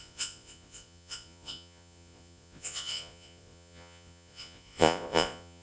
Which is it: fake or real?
fake